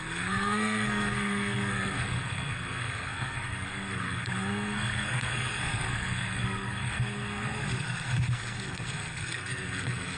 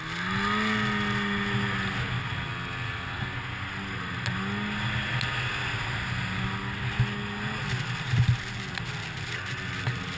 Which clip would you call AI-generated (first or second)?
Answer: first